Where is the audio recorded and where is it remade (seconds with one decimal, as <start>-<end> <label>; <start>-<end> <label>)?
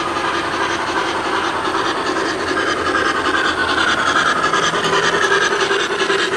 0.0-6.4 recorded